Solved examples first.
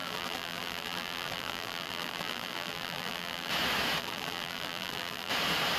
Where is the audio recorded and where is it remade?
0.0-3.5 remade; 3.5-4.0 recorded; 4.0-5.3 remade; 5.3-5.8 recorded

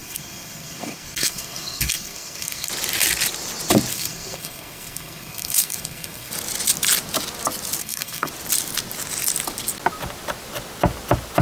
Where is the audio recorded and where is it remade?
0.0-2.7 remade; 2.7-3.9 recorded; 3.9-6.3 remade; 6.3-7.8 recorded; 7.8-8.3 remade; 8.3-11.4 recorded

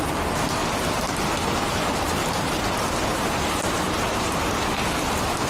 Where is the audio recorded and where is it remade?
0.0-0.6 recorded; 0.6-2.5 remade; 2.5-3.1 recorded; 3.1-4.5 remade; 4.5-5.5 recorded

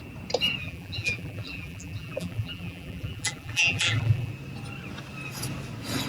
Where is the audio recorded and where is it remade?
0.0-0.6 recorded; 0.6-4.3 remade; 4.3-6.1 recorded

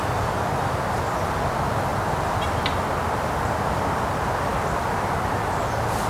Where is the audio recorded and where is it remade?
0.0-6.1 recorded

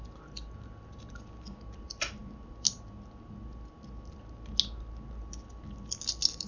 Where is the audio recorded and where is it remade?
0.0-6.5 recorded

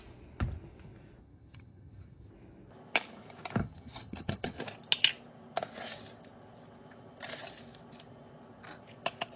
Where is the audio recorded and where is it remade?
0.0-1.2 recorded; 1.2-2.3 remade; 2.3-3.6 recorded; 3.6-4.6 remade; 4.6-9.4 recorded